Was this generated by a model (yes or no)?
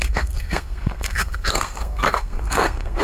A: yes